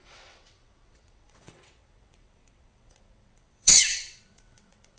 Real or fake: fake